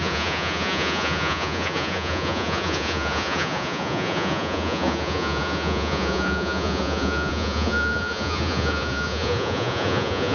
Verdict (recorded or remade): remade